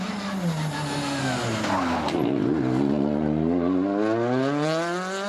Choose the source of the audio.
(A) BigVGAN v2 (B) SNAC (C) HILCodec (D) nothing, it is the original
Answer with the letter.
D